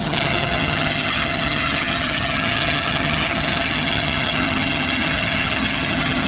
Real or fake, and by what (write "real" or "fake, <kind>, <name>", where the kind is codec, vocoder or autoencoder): fake, vocoder, HiFi-GAN